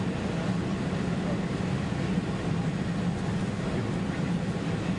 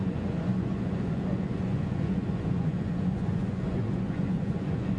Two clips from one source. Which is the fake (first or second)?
second